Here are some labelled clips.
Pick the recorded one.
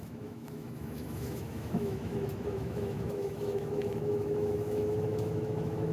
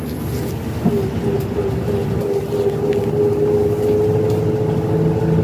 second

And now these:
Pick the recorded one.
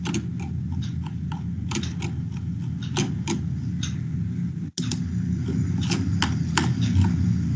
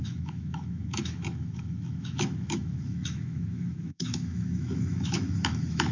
first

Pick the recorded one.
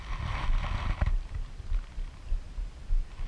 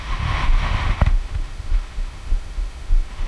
first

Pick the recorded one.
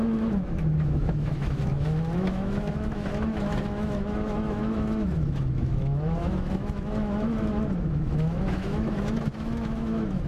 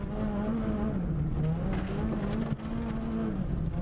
second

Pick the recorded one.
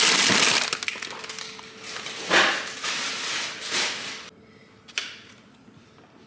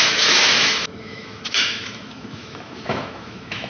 first